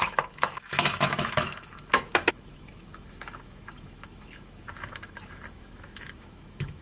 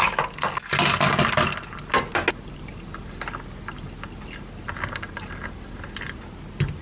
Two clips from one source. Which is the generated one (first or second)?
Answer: first